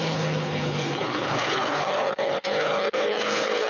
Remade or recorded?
remade